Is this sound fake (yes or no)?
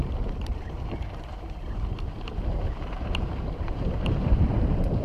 yes